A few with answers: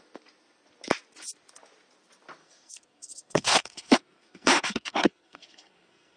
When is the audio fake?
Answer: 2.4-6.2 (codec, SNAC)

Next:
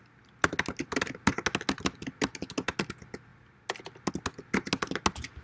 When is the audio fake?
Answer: none

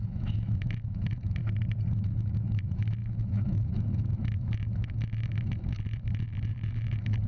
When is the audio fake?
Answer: 0.0-1.4 (autoencoder, DAC-VAE); 1.9-7.3

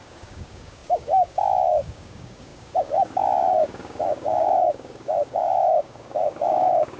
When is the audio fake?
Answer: 0.0-7.0 (codec, DAC)

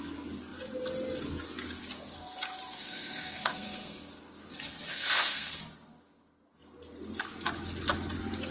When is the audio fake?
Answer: 2.7-4.1 (codec, SNAC); 4.9-5.6